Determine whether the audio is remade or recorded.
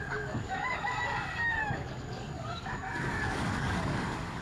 remade